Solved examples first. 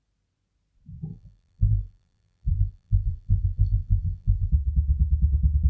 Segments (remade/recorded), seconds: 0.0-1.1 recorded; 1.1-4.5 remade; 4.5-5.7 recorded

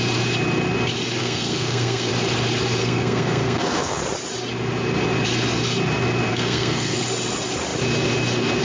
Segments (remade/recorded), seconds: 0.0-1.2 recorded; 1.2-2.1 remade; 2.1-2.8 recorded; 2.8-4.0 remade; 4.0-6.3 recorded; 6.3-7.0 remade; 7.0-8.6 recorded

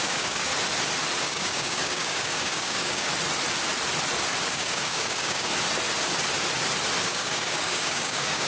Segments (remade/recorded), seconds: 0.0-0.5 remade; 0.5-1.2 recorded; 1.2-3.1 remade; 3.1-4.5 recorded; 4.5-5.5 remade; 5.5-7.0 recorded; 7.0-8.5 remade

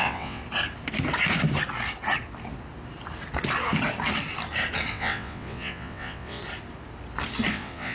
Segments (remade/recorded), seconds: 0.0-0.4 remade; 0.4-4.9 recorded; 4.9-6.4 remade; 6.4-7.5 recorded; 7.5-7.9 remade

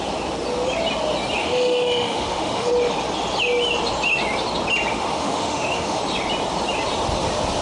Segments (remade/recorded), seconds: 0.0-1.4 recorded; 1.4-2.7 remade; 2.7-4.9 recorded; 4.9-6.0 remade; 6.0-7.6 recorded

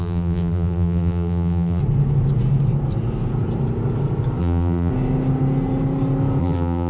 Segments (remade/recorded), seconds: 0.0-1.8 remade; 1.8-4.4 recorded; 4.4-4.9 remade; 4.9-6.4 recorded; 6.4-6.9 remade